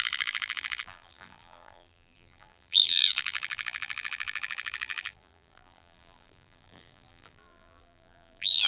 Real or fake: fake